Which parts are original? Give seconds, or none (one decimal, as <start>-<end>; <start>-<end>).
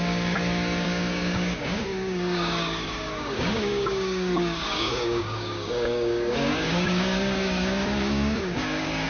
none